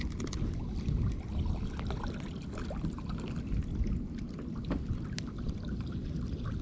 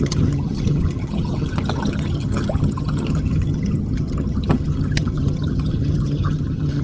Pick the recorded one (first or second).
first